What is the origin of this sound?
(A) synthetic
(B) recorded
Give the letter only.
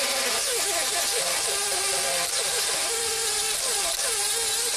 B